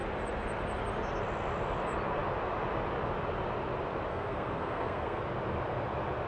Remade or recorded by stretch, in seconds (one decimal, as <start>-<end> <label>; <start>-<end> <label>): 0.0-4.1 recorded; 4.1-5.2 remade; 5.2-6.3 recorded